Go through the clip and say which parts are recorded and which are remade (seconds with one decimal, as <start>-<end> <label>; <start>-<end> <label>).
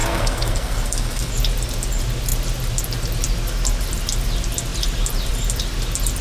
0.0-1.3 remade; 1.3-6.2 recorded